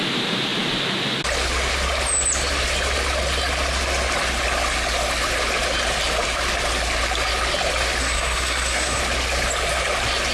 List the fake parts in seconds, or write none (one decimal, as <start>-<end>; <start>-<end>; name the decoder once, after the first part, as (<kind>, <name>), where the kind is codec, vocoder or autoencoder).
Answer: 8.0-9.0 (codec, SNAC)